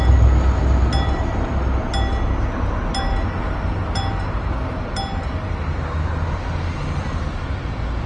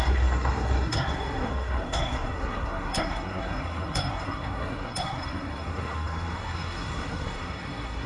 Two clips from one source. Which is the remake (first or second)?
second